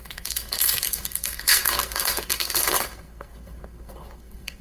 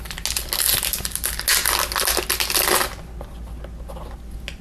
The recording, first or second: second